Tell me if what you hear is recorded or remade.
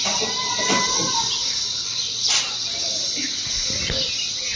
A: recorded